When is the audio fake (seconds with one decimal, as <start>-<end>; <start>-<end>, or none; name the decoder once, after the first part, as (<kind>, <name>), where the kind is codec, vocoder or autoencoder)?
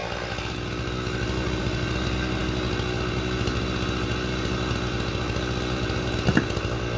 none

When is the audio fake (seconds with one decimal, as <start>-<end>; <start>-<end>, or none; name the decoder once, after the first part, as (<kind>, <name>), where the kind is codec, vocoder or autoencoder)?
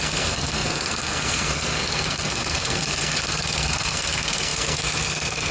0.0-5.5 (codec, SNAC)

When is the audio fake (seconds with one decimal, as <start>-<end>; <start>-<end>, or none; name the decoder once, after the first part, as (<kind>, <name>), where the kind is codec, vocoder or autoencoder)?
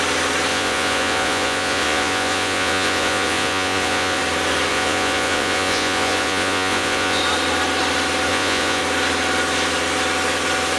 0.5-4.2 (vocoder, Vocos); 4.7-7.2; 8.3-8.8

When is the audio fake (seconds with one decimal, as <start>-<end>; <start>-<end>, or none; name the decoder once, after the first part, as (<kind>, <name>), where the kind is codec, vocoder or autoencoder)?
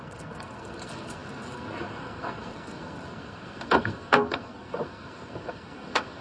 0.0-6.2 (codec, SNAC)